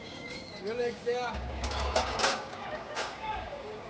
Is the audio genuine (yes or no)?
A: no